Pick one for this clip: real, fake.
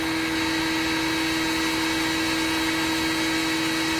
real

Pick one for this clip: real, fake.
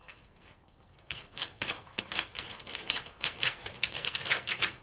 fake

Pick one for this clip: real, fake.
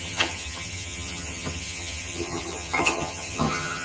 fake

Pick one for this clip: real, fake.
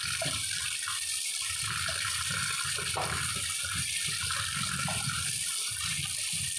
fake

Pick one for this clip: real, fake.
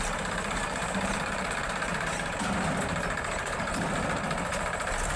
fake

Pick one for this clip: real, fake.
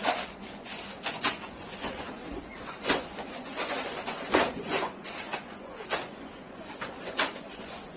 fake